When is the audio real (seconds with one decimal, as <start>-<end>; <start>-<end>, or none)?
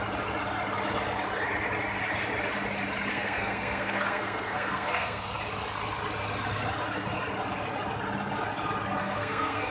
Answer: 0.0-3.1; 5.3-9.0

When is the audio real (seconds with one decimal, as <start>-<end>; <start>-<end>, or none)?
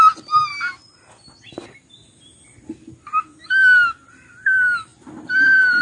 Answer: 0.0-4.9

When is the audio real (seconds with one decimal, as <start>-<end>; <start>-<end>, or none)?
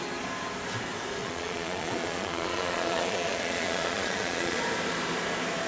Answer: 0.0-1.2; 4.6-5.7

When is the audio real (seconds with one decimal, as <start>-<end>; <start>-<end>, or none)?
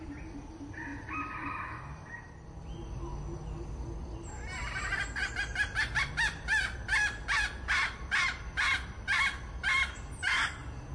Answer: 0.0-0.9; 1.5-10.9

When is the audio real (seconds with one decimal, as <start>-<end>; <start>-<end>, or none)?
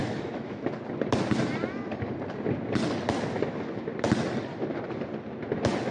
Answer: 0.6-5.9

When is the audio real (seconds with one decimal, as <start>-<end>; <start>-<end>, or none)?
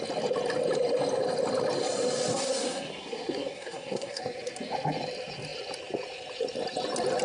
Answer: 0.0-2.3; 4.2-7.2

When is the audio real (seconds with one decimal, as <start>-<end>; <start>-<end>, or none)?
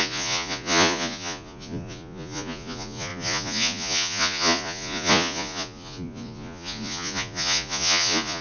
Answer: none